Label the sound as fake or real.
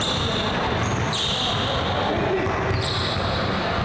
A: real